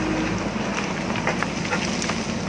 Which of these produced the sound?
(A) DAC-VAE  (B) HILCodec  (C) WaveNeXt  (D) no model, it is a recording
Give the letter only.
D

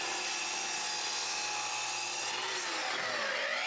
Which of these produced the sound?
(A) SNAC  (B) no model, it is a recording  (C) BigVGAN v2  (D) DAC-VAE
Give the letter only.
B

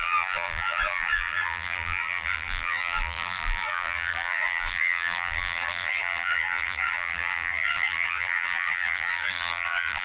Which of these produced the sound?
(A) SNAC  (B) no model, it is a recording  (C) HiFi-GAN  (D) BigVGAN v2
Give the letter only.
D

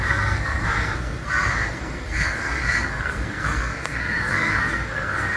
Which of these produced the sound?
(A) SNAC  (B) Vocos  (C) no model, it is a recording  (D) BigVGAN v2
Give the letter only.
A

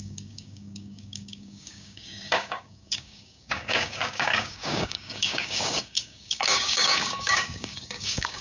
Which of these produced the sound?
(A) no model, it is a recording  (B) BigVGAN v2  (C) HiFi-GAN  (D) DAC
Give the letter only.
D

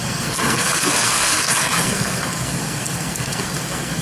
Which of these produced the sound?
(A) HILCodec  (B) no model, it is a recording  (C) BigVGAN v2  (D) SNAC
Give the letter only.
D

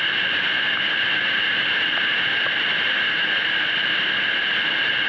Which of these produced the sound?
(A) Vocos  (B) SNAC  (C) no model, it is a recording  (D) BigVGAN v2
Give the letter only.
C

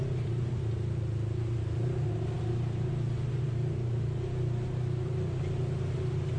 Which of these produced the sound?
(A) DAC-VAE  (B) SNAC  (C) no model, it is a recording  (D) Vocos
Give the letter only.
C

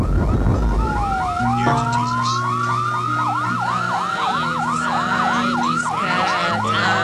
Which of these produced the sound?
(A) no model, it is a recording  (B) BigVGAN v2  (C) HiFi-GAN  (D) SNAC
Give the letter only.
A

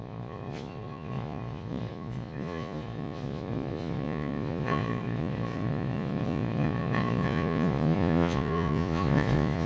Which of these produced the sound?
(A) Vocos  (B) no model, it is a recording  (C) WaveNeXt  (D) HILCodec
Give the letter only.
A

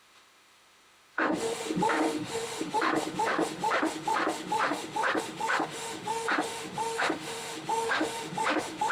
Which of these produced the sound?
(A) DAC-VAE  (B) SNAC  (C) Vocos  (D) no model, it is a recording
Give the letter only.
A